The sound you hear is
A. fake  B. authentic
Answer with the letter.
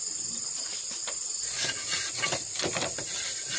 B